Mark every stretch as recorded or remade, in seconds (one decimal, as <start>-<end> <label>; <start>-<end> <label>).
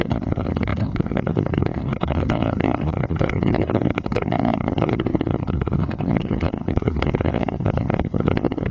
0.0-8.7 remade